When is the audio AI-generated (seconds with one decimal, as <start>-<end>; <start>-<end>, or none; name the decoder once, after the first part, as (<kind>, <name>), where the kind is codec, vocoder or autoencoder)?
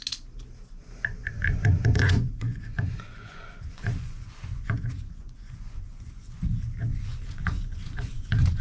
1.2-6.4 (vocoder, Vocos); 6.9-8.6